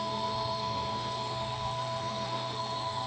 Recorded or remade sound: remade